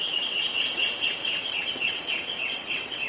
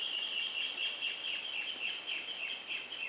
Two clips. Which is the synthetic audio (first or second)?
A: first